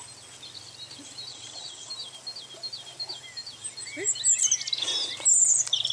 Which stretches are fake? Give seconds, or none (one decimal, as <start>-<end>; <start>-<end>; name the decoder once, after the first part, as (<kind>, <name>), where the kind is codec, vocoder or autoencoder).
1.3-1.9 (vocoder, WaveNeXt)